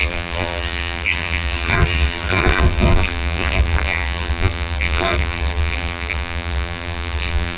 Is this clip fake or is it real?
fake